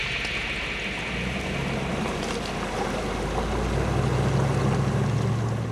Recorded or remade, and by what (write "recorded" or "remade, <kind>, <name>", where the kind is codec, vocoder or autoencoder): recorded